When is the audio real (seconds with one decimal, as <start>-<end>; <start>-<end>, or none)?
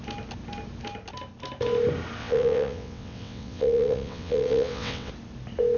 0.0-2.2; 5.1-5.8